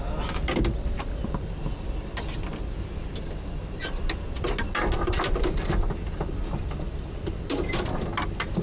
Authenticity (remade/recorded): recorded